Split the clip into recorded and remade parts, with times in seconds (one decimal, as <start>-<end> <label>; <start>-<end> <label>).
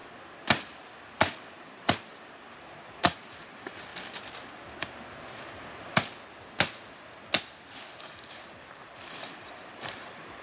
0.0-1.5 recorded; 1.5-3.9 remade; 3.9-8.3 recorded; 8.3-10.4 remade